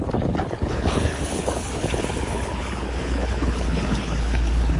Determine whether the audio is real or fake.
fake